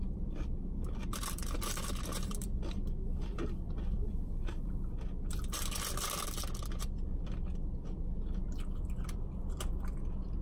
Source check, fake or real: fake